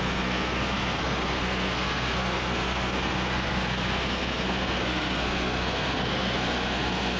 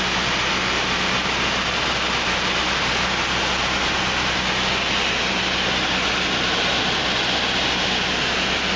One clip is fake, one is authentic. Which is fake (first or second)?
first